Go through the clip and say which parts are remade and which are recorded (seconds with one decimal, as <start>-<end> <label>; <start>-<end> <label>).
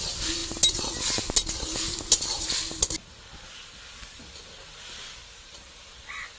0.0-6.4 recorded